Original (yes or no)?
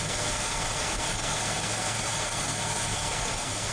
no